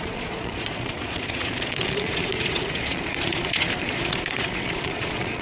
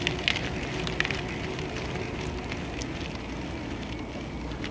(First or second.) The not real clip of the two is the first